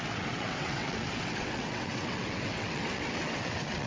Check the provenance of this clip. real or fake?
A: fake